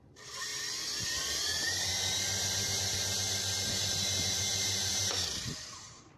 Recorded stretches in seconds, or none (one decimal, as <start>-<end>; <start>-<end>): 0.5-1.0; 1.9-4.4